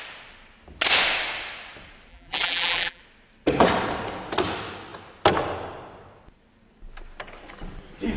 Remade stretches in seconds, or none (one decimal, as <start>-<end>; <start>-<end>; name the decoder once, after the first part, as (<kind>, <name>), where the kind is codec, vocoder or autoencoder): 2.1-3.0 (vocoder, BigVGAN v2)